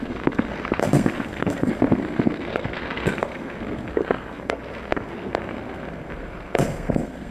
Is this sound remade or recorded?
remade